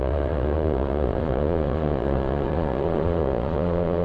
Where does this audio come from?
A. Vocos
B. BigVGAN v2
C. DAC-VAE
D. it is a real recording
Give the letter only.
A